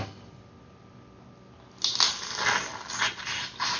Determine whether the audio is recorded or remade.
recorded